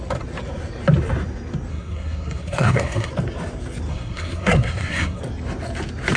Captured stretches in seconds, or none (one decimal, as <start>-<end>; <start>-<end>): 0.0-1.7; 3.1-3.9; 5.2-6.2